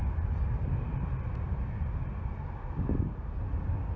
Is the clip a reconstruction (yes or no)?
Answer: no